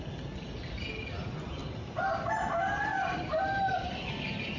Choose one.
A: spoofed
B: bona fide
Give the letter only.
B